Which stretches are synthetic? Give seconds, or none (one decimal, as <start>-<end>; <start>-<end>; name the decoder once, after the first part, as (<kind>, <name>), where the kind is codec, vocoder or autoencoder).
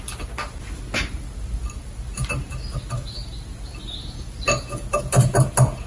none